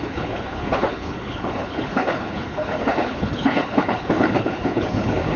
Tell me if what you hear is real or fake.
fake